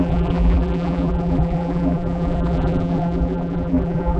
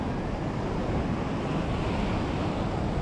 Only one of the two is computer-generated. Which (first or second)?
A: first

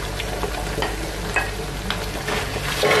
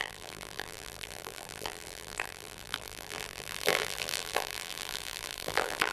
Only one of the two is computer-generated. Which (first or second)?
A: second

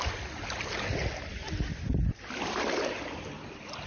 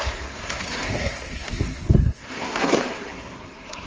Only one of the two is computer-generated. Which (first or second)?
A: second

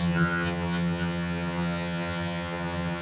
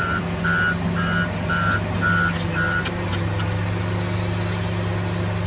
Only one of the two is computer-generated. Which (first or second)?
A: first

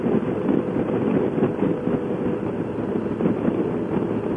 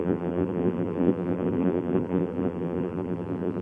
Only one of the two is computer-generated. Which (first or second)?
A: second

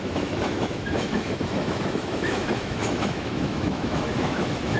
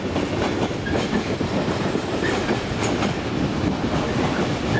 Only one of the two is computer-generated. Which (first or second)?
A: first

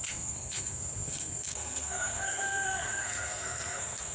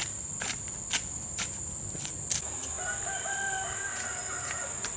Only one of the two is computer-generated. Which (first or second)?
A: first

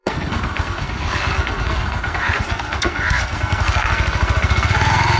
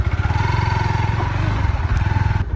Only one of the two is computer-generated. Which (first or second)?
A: first